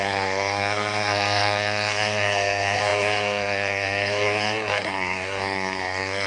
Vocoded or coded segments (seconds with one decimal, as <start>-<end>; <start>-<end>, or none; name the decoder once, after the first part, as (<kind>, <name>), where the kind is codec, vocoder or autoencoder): 0.0-6.3 (codec, SNAC)